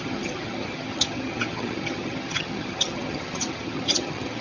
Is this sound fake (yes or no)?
yes